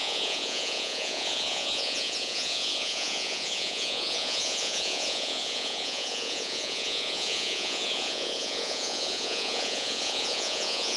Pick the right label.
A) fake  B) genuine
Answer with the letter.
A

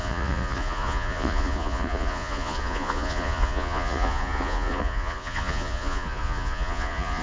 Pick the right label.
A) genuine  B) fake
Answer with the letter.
B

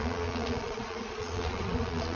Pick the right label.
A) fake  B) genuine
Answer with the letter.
A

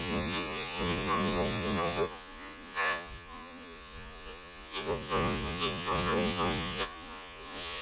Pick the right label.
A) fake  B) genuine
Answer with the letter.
A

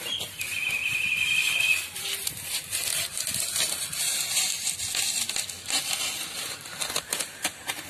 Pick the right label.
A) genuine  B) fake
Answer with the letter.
A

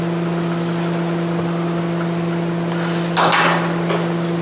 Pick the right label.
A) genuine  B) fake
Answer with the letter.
A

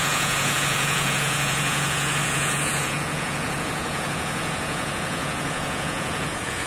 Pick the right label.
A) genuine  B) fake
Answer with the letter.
B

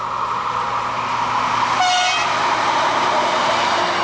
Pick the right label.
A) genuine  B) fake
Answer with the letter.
A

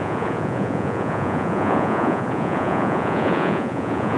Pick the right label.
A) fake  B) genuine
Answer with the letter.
A